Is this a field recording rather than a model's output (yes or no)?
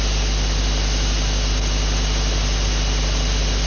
yes